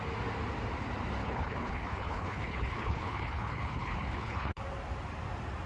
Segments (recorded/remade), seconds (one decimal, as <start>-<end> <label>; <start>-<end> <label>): 0.0-1.2 recorded; 1.2-4.6 remade; 4.6-5.7 recorded